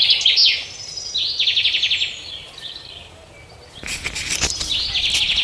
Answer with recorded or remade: recorded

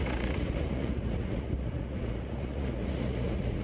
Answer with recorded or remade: remade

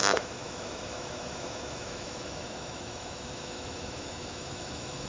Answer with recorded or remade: remade